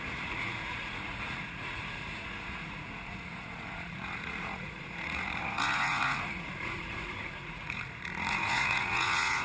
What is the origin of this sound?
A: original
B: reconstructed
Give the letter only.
B